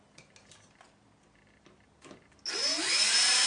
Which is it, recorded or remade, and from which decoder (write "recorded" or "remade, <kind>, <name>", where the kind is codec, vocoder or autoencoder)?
recorded